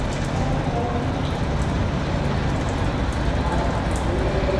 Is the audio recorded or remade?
recorded